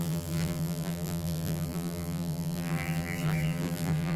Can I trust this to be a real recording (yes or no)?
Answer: no